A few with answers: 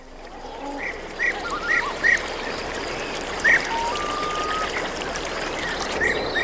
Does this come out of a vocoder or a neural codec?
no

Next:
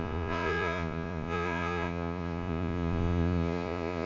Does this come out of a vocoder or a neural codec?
yes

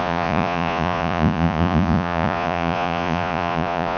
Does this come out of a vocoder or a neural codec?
yes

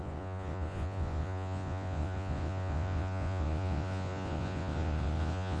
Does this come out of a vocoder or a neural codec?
yes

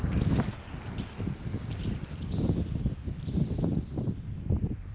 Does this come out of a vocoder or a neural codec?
no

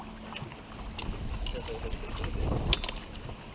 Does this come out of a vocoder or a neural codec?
no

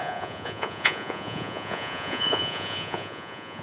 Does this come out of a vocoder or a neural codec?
yes